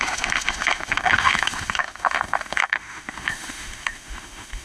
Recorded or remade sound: remade